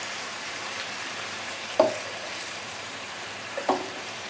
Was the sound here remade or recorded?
remade